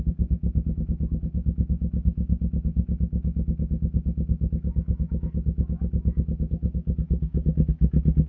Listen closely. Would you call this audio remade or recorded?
remade